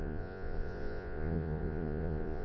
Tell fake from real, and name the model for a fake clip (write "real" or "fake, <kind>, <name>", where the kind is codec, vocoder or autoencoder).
fake, vocoder, Vocos